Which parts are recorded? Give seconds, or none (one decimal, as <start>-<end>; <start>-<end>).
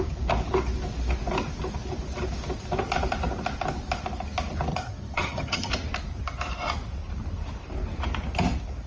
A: 0.0-4.7; 5.7-8.9